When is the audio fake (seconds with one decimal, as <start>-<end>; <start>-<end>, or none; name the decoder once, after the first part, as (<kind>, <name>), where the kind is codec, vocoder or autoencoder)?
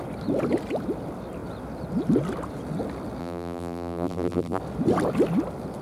3.2-4.6 (vocoder, BigVGAN v2)